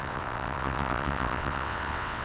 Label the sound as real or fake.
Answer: fake